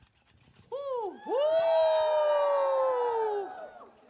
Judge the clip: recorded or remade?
recorded